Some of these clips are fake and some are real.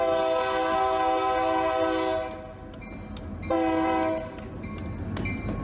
real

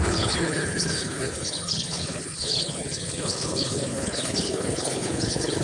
fake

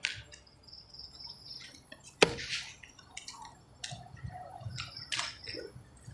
real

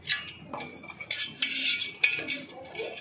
real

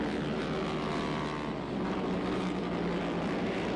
real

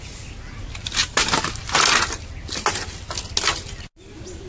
real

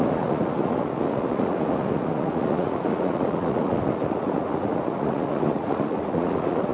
fake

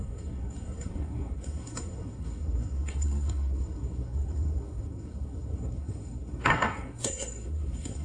fake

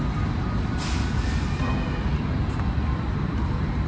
real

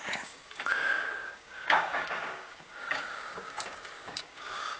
fake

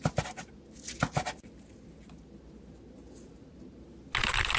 real